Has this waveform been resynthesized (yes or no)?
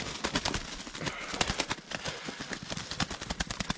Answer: no